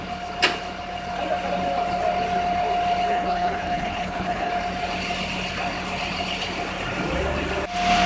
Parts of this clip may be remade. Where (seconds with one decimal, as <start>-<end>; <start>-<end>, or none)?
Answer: 3.1-4.5